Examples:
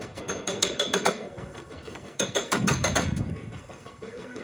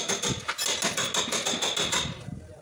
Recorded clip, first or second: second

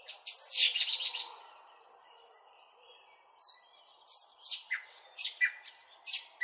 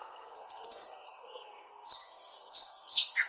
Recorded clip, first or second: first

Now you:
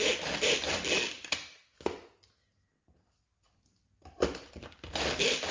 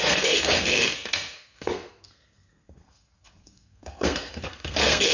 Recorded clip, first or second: first